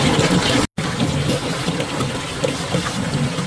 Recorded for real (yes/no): yes